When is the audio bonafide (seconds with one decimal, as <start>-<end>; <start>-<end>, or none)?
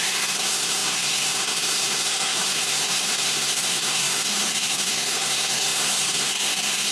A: none